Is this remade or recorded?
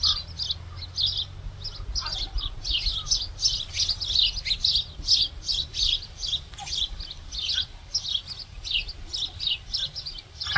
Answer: recorded